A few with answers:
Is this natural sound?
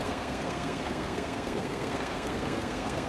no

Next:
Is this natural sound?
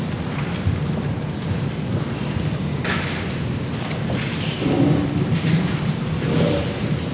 yes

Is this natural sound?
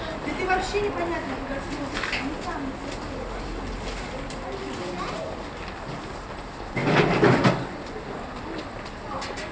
yes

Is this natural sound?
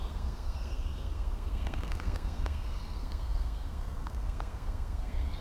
no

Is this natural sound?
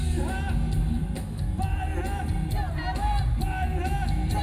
yes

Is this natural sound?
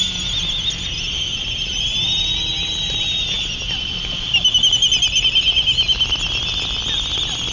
yes